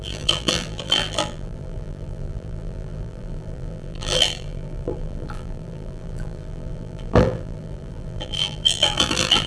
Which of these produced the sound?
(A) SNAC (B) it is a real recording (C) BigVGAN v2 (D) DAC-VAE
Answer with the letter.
C